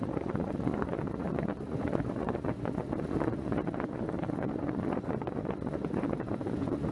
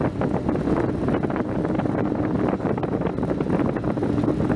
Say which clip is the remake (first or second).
first